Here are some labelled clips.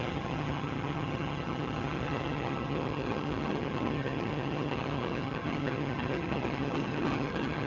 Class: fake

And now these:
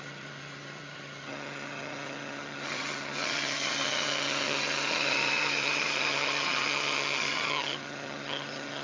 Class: fake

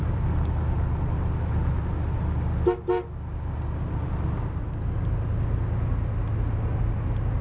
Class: real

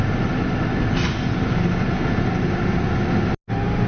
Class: real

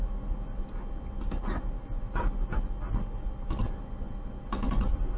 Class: real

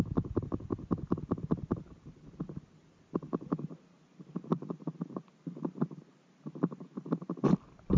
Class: real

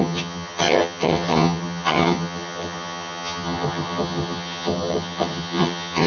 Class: fake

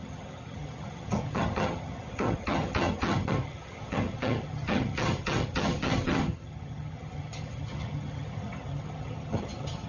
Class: fake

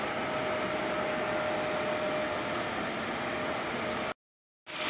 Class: real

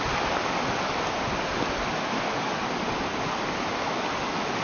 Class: real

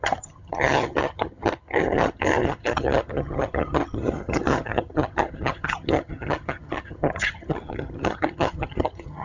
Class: fake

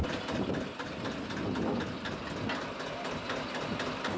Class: real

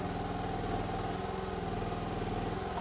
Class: real